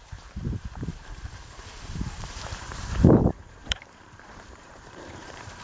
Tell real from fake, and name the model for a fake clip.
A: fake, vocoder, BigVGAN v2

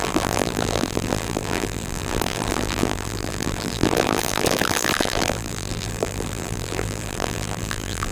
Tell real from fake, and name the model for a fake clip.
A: fake, vocoder, BigVGAN v2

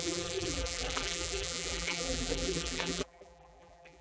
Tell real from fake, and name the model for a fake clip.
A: fake, vocoder, BigVGAN v2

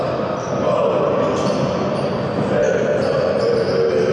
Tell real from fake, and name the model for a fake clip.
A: fake, vocoder, BigVGAN v2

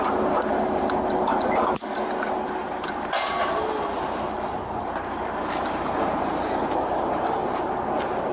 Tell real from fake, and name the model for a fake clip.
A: real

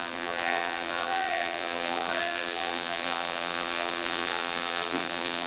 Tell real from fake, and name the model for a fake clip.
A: fake, vocoder, BigVGAN v2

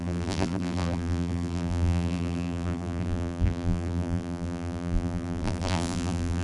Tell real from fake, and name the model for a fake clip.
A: fake, vocoder, BigVGAN v2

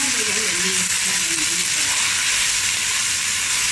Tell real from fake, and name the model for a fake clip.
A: real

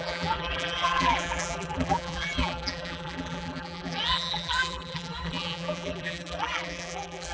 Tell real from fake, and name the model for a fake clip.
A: fake, vocoder, BigVGAN v2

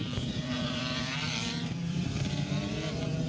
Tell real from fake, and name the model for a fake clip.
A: fake, vocoder, BigVGAN v2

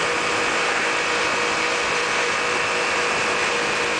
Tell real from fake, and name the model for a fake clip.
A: real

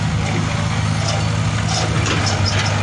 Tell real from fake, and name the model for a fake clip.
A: real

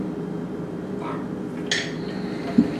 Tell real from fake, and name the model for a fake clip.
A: real